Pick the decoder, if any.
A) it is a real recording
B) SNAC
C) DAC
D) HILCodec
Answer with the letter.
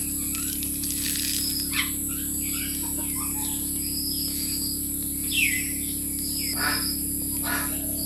A